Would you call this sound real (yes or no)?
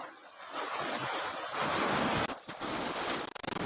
yes